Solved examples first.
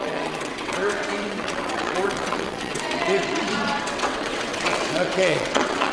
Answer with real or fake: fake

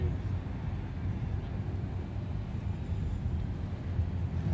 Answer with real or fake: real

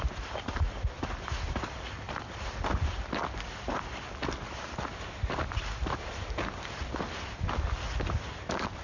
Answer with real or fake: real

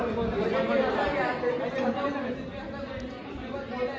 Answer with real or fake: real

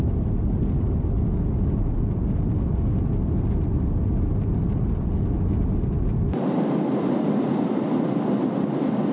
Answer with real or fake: real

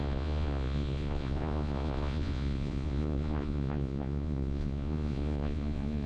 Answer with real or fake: fake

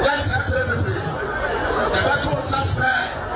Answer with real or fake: fake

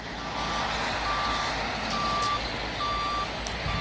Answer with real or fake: real